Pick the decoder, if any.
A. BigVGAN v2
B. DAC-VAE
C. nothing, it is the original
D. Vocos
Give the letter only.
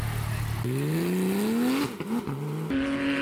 C